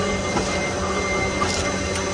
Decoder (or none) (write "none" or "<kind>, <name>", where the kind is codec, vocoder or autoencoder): none